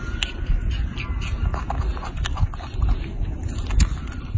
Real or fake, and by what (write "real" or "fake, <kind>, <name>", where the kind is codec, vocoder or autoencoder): real